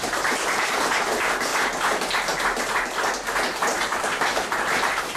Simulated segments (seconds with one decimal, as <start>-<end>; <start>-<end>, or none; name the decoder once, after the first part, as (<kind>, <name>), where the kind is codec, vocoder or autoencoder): 0.0-1.5 (vocoder, BigVGAN v2); 3.6-5.2